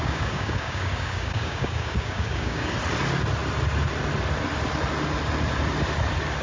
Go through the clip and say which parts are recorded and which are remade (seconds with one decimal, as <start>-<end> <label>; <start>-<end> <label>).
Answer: 0.0-2.7 remade; 2.7-6.4 recorded